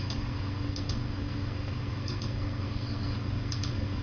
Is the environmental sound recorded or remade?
remade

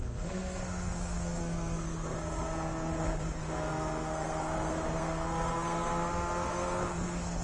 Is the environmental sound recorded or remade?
remade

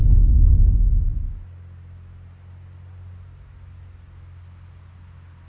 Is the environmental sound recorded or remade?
recorded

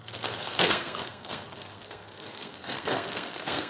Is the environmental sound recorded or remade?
remade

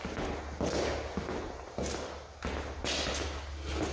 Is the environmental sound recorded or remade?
recorded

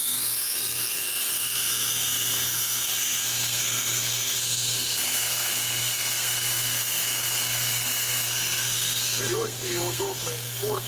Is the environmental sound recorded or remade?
remade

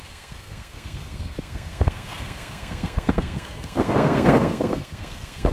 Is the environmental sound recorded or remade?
remade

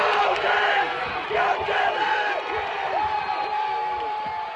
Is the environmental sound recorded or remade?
recorded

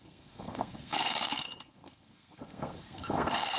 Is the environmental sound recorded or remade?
remade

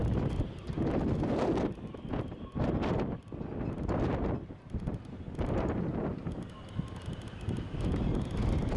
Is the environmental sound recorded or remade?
recorded